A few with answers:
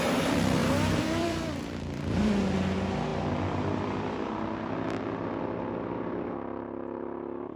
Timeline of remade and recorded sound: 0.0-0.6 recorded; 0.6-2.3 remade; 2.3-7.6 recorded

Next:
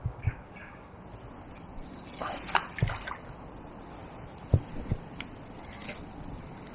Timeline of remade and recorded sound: 0.0-1.0 remade; 1.0-6.7 recorded

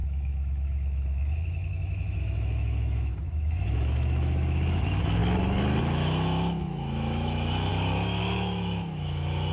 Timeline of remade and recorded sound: 0.0-5.2 remade; 5.2-5.8 recorded; 5.8-9.5 remade